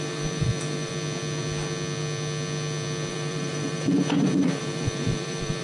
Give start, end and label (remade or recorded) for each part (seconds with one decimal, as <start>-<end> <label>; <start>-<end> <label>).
0.0-0.9 remade; 0.9-3.1 recorded; 3.1-5.6 remade